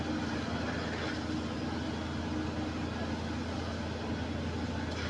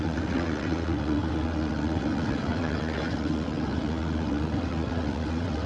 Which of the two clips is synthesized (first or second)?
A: second